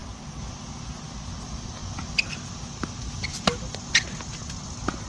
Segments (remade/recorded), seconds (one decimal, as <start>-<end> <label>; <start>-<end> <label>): 0.0-5.1 recorded